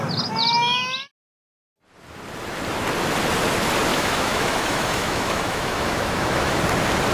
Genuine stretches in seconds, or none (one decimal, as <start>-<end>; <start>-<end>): 0.0-3.9; 6.6-7.1